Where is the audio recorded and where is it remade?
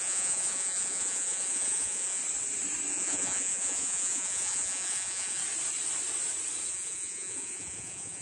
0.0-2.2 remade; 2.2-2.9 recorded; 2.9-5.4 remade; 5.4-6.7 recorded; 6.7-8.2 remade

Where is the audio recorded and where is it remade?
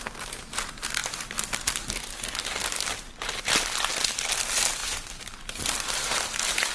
0.0-4.8 recorded; 4.8-6.7 remade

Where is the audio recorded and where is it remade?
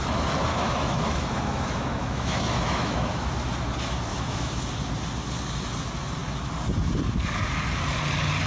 0.0-0.5 recorded; 0.5-3.3 remade; 3.3-4.1 recorded; 4.1-4.6 remade; 4.6-8.5 recorded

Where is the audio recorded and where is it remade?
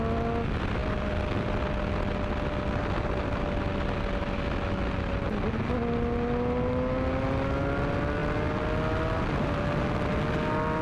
0.0-10.8 recorded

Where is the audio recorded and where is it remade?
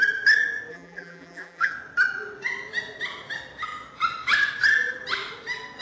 0.0-0.7 recorded; 0.7-1.7 remade; 1.7-5.8 recorded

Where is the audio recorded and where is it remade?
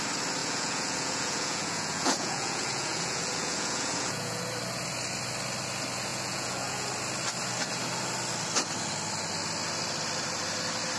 0.0-0.4 recorded; 0.4-4.4 remade; 4.4-6.1 recorded; 6.1-6.9 remade; 6.9-11.0 recorded